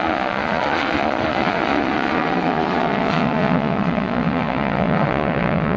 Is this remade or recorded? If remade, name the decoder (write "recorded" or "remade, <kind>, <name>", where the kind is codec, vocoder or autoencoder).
remade, vocoder, Vocos